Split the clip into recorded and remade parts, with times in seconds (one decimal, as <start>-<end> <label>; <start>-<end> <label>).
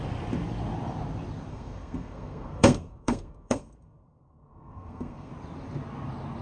0.0-1.5 recorded; 1.5-5.3 remade; 5.3-6.4 recorded